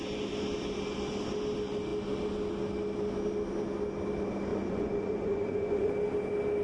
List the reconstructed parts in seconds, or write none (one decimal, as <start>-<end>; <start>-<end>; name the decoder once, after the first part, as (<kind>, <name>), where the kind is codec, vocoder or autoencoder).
4.5-5.9 (vocoder, Vocos)